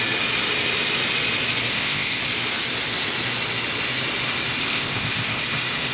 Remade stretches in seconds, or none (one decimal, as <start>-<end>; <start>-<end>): 1.7-2.2; 4.6-5.4